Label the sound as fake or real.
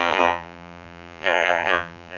fake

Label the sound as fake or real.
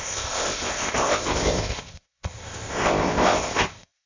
fake